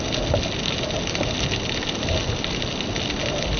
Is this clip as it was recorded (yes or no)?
yes